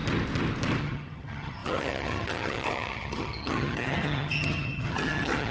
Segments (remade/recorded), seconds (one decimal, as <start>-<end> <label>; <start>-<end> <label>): 0.0-0.8 recorded; 0.8-5.5 remade

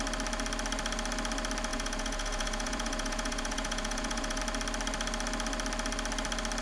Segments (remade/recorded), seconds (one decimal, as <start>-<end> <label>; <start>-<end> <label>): 0.0-1.7 recorded; 1.7-4.4 remade; 4.4-6.6 recorded

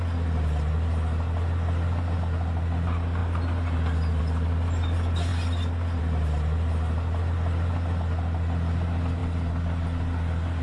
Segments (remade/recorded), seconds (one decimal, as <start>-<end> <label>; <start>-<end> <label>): 0.0-10.6 recorded